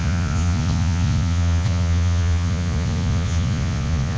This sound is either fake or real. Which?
fake